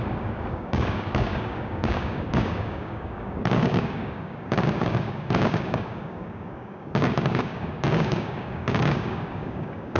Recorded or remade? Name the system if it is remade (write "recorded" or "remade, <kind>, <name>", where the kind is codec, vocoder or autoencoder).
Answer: remade, codec, DAC